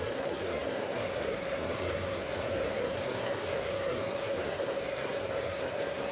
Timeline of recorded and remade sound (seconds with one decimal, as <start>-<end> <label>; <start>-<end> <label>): 0.0-6.1 remade